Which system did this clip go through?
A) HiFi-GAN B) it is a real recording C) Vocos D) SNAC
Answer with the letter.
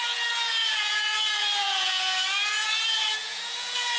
C